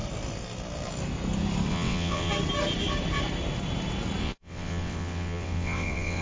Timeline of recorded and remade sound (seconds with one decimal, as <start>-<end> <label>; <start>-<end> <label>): 0.0-1.7 recorded; 1.7-2.3 remade; 2.3-4.2 recorded; 4.2-6.2 remade